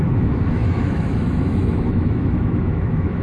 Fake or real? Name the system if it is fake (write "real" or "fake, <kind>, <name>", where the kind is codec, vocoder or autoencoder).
fake, autoencoder, DAC-VAE